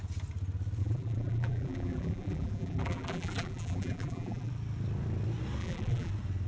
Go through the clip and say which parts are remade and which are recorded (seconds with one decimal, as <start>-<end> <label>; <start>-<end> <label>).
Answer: 0.0-0.8 recorded; 0.8-4.5 remade; 4.5-5.6 recorded; 5.6-6.1 remade; 6.1-6.5 recorded